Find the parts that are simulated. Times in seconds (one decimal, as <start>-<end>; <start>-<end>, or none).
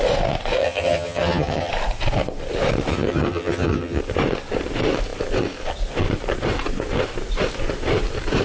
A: 0.6-1.7; 2.9-4.0